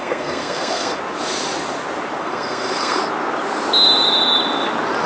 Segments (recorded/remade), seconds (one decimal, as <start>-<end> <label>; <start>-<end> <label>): 0.0-1.0 remade; 1.0-2.2 recorded; 2.2-3.0 remade; 3.0-5.1 recorded